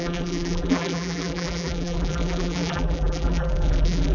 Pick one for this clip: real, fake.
fake